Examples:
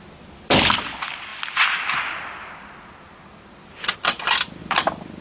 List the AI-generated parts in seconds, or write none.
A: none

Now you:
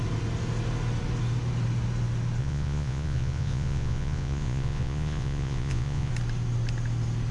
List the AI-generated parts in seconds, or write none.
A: 2.4-6.1 (vocoder, Vocos)

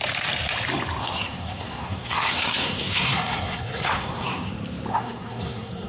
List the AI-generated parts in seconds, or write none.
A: 1.0-4.5 (codec, SNAC); 4.9-5.9

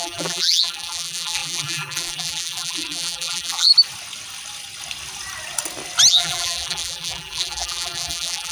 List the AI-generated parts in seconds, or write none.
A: 0.0-3.7 (vocoder, BigVGAN v2); 6.1-8.5

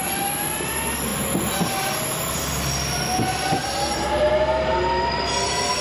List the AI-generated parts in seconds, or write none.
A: 3.6-4.3 (vocoder, BigVGAN v2)

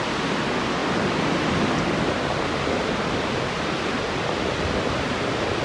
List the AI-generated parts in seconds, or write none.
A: none